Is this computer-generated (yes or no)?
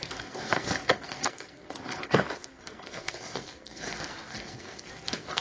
yes